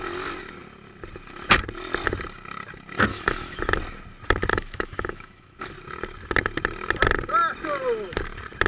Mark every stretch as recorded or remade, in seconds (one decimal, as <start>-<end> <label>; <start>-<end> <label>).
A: 0.0-3.1 recorded; 3.1-3.6 remade; 3.6-4.5 recorded; 4.5-5.6 remade; 5.6-8.7 recorded